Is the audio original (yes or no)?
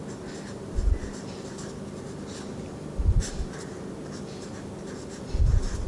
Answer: yes